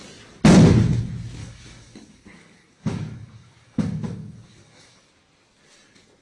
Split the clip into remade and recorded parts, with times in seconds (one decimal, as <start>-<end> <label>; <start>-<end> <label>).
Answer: 0.0-1.4 recorded; 1.4-5.1 remade; 5.1-6.2 recorded